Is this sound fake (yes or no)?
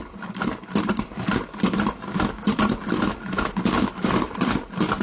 no